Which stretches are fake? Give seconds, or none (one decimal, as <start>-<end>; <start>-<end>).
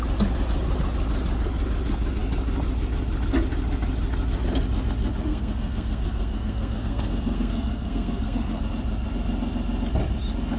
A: 5.3-8.6